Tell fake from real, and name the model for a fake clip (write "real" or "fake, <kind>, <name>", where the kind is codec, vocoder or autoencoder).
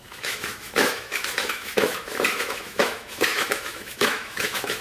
fake, autoencoder, DAC-VAE